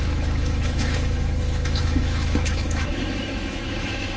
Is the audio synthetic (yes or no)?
yes